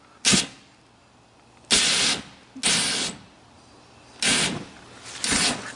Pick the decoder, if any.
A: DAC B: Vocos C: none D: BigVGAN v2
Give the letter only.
C